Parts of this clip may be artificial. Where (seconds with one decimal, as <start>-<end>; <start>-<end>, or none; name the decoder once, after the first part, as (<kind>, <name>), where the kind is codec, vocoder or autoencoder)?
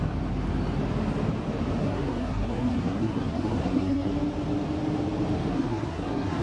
1.8-4.1 (codec, SNAC); 5.5-6.4